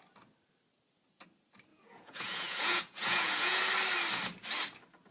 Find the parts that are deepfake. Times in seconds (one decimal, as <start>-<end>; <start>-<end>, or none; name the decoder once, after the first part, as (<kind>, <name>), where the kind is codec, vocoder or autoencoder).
1.7-3.6 (vocoder, Vocos)